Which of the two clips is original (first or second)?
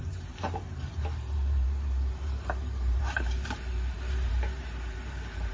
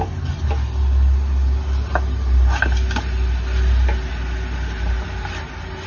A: second